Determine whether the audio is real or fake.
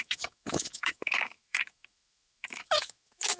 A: fake